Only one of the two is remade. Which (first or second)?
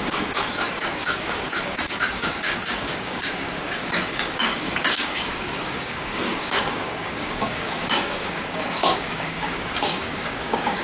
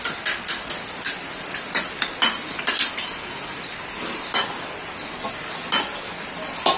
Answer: first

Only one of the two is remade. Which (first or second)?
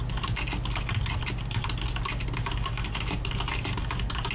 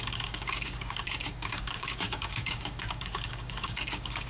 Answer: second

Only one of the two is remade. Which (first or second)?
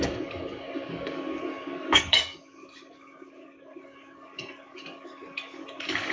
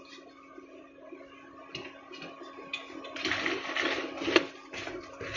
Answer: first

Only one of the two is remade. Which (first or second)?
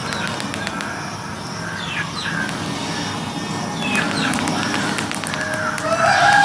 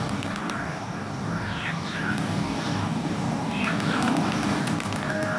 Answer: second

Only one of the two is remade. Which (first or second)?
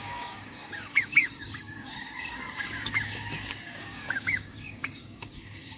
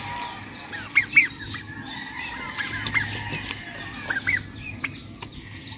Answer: first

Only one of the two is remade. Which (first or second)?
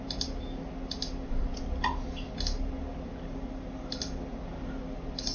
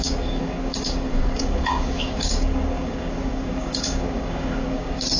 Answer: second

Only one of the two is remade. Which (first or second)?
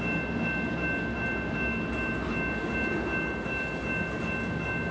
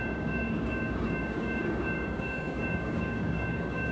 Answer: second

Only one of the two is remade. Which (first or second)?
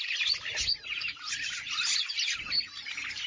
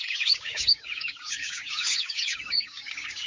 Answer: second